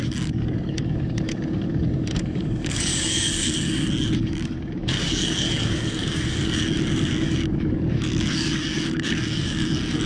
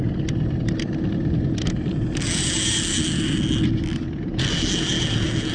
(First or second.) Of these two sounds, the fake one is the first